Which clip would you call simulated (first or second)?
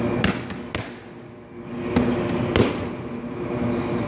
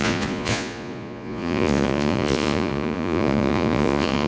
second